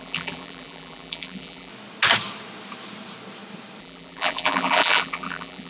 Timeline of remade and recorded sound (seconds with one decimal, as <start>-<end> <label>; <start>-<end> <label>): 0.0-1.7 remade; 1.7-3.8 recorded; 3.8-5.7 remade